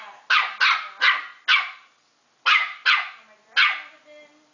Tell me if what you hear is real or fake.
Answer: real